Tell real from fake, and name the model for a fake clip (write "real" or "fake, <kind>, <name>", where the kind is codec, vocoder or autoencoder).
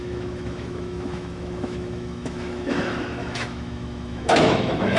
fake, autoencoder, DAC-VAE